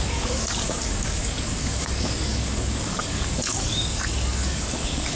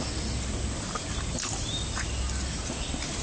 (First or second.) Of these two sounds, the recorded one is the second